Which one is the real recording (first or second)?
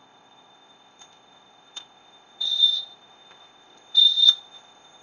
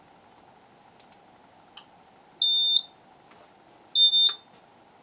second